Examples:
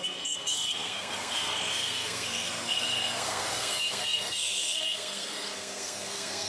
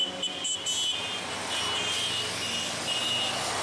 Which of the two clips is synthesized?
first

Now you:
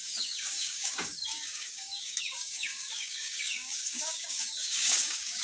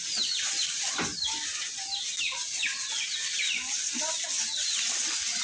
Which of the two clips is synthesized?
first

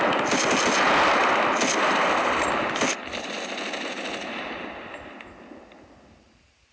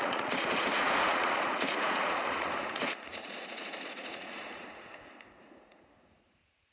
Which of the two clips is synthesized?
second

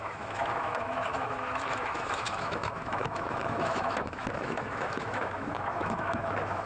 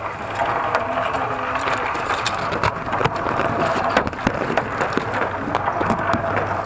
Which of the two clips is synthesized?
first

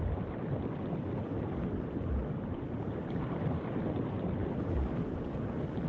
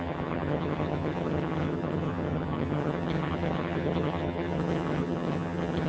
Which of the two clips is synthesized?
second